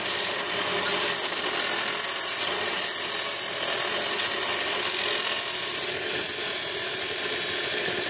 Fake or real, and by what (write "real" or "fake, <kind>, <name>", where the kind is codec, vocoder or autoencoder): real